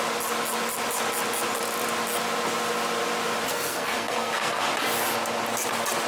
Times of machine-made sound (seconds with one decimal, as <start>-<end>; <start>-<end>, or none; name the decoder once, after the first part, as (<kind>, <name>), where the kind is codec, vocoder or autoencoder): 3.5-4.7 (codec, SNAC)